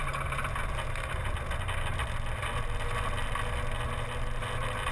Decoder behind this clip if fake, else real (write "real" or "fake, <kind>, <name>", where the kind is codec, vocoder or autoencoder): real